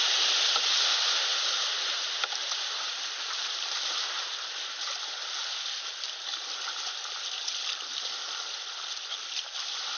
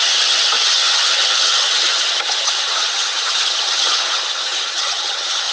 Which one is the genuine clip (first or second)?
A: first